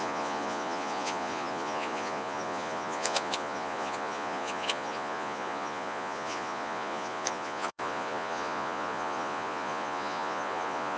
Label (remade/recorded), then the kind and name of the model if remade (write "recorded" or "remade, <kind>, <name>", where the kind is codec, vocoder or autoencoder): remade, vocoder, Vocos